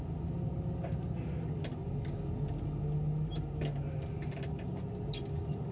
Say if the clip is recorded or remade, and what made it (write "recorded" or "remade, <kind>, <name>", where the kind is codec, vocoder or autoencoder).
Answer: recorded